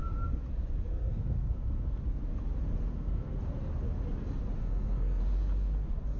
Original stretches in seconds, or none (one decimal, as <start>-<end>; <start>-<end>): 0.0-0.9; 2.0-2.9; 3.4-4.6; 5.2-6.2